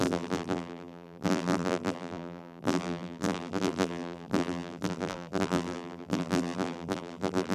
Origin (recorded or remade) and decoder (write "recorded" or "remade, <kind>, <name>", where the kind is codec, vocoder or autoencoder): remade, vocoder, BigVGAN v2